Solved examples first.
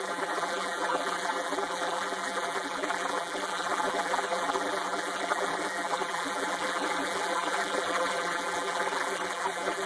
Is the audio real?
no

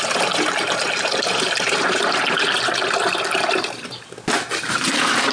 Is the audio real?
yes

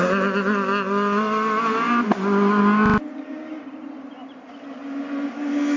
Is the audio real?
yes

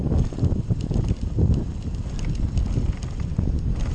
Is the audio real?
yes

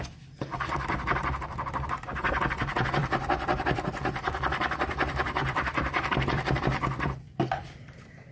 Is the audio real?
no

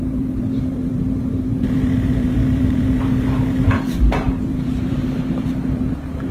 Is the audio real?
no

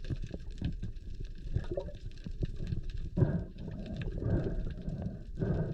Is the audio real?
no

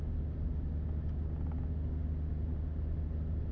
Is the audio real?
yes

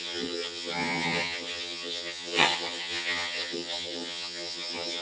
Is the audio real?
no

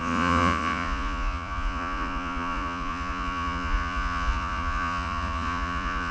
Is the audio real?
no